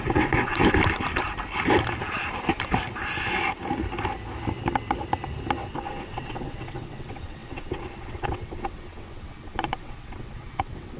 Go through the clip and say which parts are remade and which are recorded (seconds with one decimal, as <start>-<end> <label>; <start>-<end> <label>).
0.0-0.6 remade; 0.6-5.7 recorded; 5.7-11.0 remade